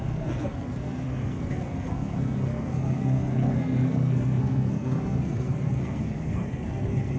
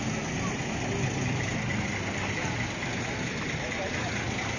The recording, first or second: second